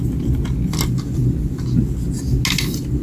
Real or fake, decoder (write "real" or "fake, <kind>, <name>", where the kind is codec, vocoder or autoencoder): real